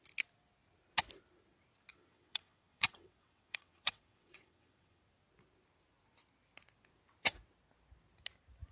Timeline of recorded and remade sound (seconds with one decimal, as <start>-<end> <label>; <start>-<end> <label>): 0.0-1.9 recorded; 1.9-5.0 remade; 5.0-8.7 recorded